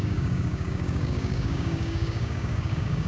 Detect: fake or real fake